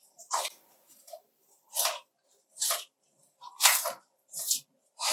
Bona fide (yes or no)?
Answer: no